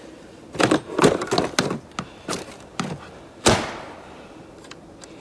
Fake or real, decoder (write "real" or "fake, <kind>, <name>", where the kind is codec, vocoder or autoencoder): real